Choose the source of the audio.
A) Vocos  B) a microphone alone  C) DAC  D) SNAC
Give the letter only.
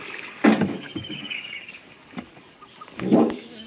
C